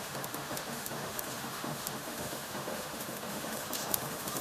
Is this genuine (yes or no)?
no